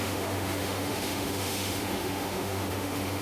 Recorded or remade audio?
remade